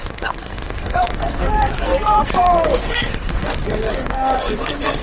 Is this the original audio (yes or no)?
no